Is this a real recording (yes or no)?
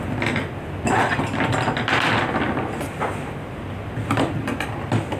yes